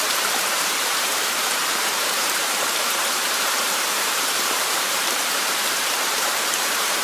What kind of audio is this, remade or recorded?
remade